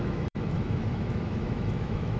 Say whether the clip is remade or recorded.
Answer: remade